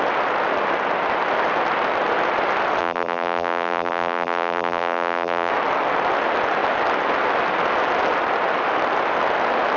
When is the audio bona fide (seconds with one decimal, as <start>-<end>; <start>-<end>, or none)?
0.0-2.8; 5.5-9.8

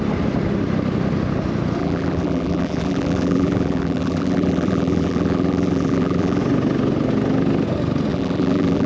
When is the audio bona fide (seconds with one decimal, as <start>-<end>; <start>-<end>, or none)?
0.0-1.8; 6.4-8.1

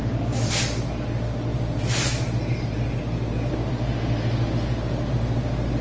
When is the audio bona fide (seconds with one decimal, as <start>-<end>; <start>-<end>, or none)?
0.5-1.5; 3.0-5.8

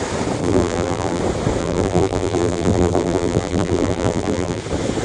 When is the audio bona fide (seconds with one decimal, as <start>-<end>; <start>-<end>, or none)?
0.0-0.4; 1.2-1.6; 4.6-5.0

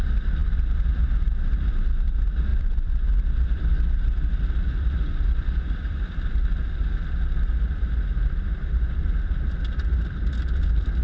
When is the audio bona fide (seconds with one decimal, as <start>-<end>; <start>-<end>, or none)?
0.0-2.5; 6.3-11.0

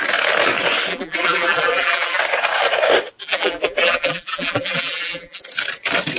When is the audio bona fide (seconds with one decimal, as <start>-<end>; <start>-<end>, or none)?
0.0-0.9; 2.2-3.2; 5.4-6.2

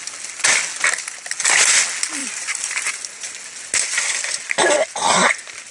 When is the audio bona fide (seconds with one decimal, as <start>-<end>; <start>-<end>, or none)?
0.0-2.2; 3.4-5.7

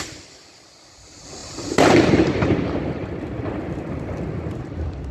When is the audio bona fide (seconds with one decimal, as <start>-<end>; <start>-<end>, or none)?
none